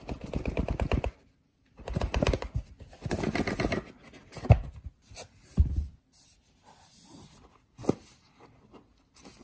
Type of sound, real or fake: real